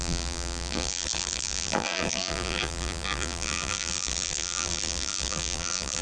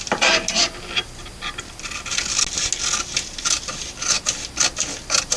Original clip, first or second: second